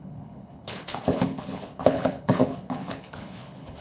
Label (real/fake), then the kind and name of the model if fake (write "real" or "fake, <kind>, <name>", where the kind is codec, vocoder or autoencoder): fake, codec, HILCodec